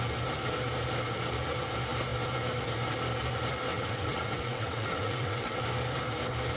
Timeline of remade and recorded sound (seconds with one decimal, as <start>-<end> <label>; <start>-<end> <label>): 0.0-3.7 recorded; 3.7-5.6 remade; 5.6-6.6 recorded